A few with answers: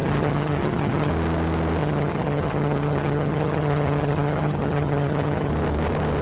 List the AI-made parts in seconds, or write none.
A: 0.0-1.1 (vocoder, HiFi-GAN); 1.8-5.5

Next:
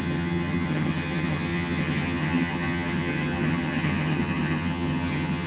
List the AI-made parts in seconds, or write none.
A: 0.0-5.5 (vocoder, HiFi-GAN)